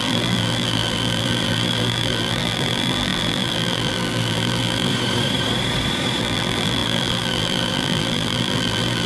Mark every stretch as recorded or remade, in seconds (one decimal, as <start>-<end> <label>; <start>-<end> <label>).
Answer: 0.0-4.9 remade; 4.9-6.2 recorded; 6.2-9.1 remade